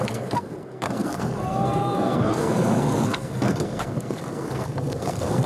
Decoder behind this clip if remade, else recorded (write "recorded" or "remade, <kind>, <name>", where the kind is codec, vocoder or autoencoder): remade, codec, SNAC